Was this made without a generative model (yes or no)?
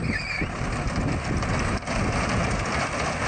yes